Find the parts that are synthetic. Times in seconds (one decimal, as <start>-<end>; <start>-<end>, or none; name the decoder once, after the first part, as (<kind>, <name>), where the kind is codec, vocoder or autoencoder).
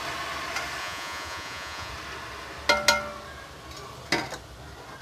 0.8-1.9 (vocoder, Vocos)